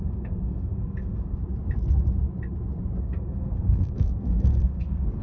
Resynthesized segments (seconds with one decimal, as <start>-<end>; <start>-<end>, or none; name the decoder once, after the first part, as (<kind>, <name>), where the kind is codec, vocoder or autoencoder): 0.0-1.4 (codec, SNAC); 3.0-5.2